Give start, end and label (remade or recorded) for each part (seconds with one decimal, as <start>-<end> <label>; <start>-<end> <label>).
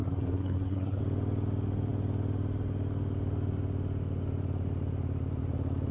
0.0-1.0 remade; 1.0-5.9 recorded